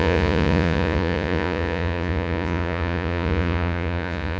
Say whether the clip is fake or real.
fake